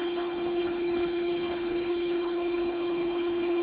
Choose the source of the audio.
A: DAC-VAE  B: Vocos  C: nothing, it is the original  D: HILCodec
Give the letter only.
D